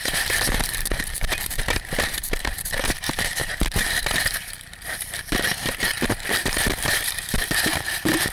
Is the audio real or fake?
fake